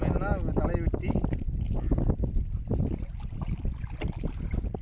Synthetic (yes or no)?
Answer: no